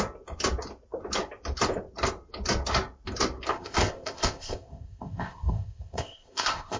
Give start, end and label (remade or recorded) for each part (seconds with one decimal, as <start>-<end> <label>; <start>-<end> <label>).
0.0-3.5 recorded; 3.5-6.8 remade